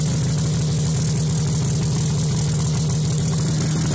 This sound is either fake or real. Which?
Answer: real